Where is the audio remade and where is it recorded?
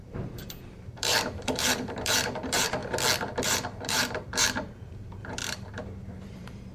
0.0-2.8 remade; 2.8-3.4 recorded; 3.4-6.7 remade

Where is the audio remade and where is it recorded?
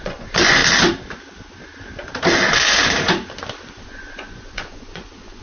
0.0-0.6 remade; 0.6-3.8 recorded; 3.8-5.4 remade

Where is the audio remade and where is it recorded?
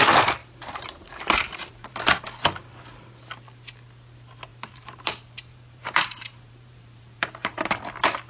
0.0-0.4 recorded; 0.4-1.9 remade; 1.9-4.5 recorded; 4.5-7.8 remade; 7.8-8.3 recorded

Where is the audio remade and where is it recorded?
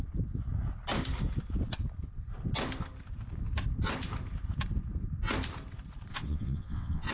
0.0-6.1 recorded; 6.1-7.1 remade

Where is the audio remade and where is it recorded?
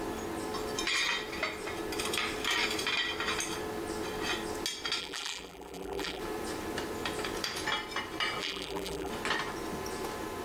0.0-5.0 recorded; 5.0-6.2 remade; 6.2-8.4 recorded; 8.4-9.1 remade; 9.1-10.4 recorded